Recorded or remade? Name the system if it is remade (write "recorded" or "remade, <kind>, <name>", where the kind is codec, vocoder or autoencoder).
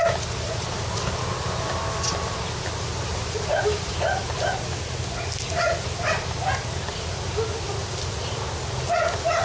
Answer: recorded